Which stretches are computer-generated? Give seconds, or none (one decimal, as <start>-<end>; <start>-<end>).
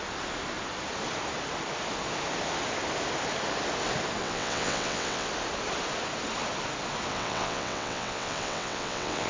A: 4.2-5.3; 7.1-9.3